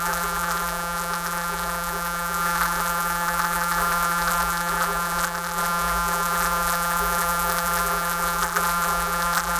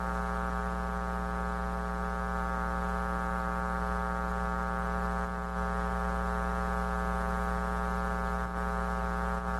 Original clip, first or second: second